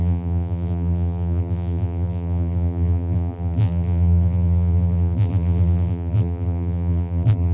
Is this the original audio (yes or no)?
no